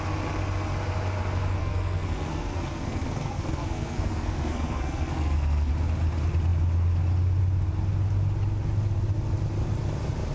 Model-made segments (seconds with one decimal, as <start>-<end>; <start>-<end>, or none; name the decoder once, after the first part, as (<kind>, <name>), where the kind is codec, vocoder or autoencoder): 1.6-5.7 (codec, SNAC)